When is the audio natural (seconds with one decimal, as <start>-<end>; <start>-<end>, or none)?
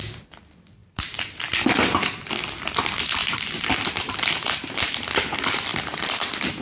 0.0-0.8; 2.3-3.2; 4.9-5.7